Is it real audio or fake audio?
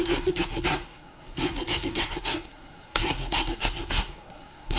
fake